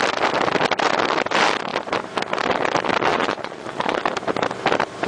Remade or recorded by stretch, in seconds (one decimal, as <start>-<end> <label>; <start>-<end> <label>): 0.0-3.1 recorded; 3.1-4.0 remade; 4.0-5.1 recorded